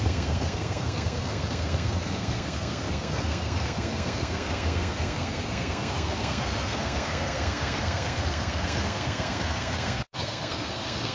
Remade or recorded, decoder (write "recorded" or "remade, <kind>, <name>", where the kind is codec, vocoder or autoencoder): remade, codec, SNAC